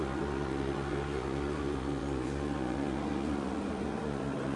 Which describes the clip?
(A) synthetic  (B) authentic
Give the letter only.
A